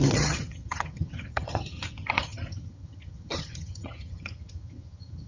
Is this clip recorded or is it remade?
remade